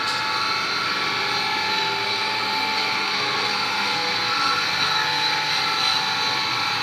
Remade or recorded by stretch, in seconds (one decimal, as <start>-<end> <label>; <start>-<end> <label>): 0.0-1.7 recorded; 1.7-5.5 remade; 5.5-6.8 recorded